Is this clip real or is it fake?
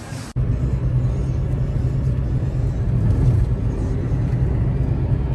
real